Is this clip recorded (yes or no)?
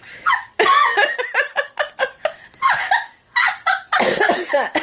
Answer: yes